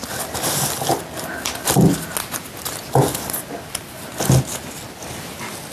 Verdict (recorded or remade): recorded